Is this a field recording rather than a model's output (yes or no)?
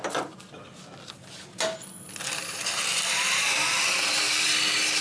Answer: yes